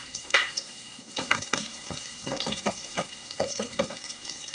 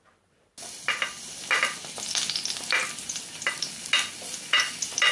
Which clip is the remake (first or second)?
first